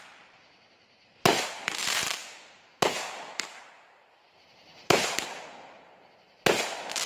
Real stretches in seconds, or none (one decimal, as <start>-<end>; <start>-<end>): 0.0-1.8; 6.1-7.1

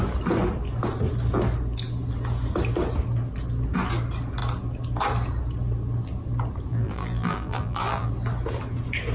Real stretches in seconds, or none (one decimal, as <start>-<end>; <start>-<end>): 0.0-6.7; 8.1-9.1

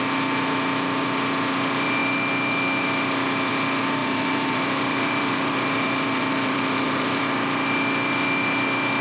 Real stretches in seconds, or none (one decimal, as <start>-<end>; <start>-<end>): 0.0-4.0; 7.2-9.0

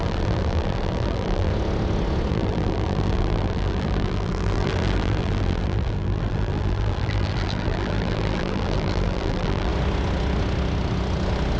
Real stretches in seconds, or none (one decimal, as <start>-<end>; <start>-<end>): 1.5-2.3; 9.7-11.6